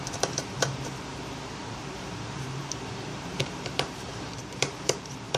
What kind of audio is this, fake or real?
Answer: fake